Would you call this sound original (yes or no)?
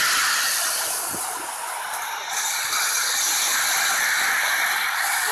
yes